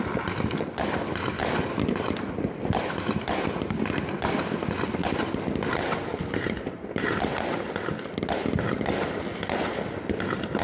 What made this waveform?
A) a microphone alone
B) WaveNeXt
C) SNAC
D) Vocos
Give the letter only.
A